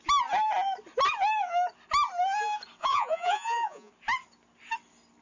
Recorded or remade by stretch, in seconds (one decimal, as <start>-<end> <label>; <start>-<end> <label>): 0.0-2.8 recorded; 2.8-3.9 remade; 3.9-5.2 recorded